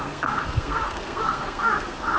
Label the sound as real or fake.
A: fake